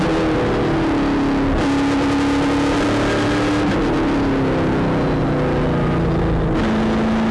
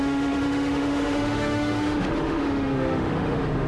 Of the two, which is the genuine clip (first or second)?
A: first